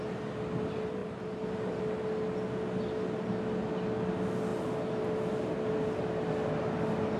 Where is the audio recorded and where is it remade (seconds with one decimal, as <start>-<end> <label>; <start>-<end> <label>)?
0.0-1.0 recorded; 1.0-1.8 remade; 1.8-7.2 recorded